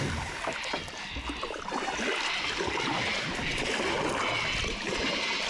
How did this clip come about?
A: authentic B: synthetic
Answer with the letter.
A